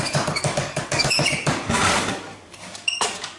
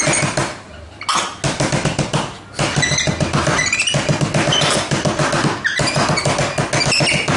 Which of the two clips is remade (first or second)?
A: first